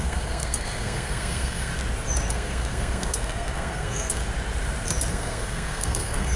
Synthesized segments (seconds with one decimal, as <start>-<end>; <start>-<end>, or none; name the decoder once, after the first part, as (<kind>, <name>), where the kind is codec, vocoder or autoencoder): 0.0-1.7 (codec, SNAC); 2.3-4.2; 5.1-6.4